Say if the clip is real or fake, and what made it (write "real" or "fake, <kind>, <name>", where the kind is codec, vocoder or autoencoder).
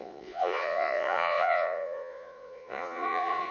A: fake, vocoder, Vocos